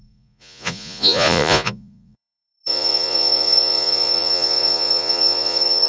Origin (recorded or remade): remade